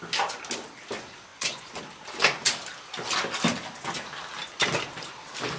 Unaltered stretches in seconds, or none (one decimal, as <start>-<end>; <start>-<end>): 0.0-1.3; 1.8-5.6